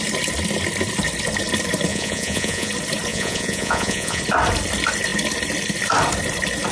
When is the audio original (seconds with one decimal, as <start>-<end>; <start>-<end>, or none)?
0.0-1.9; 2.7-3.1; 4.2-6.7